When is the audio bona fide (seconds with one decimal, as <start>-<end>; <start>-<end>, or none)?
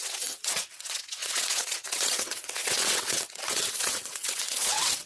none